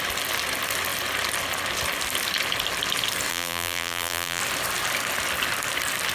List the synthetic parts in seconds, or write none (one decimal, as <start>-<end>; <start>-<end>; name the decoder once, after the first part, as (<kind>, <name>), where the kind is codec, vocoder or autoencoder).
3.3-4.4 (vocoder, BigVGAN v2)